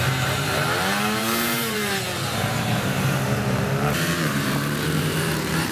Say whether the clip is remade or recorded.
remade